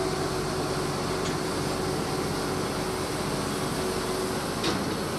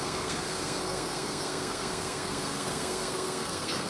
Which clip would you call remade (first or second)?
second